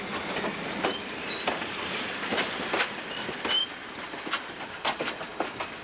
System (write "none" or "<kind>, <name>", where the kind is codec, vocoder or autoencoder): vocoder, BigVGAN v2